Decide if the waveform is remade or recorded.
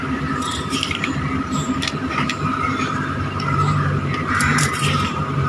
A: remade